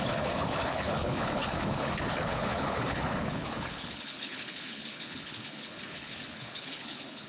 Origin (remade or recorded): remade